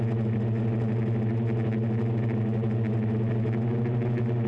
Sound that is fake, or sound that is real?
real